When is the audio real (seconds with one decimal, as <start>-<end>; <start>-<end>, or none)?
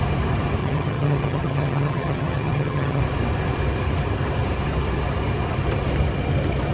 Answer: 0.0-0.6; 3.0-6.7